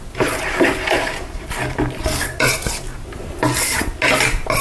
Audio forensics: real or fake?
real